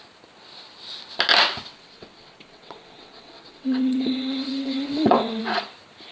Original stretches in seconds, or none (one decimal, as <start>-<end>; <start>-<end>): 0.0-1.7; 5.4-6.1